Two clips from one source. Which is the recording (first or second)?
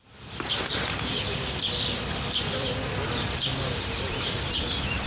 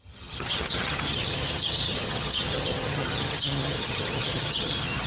first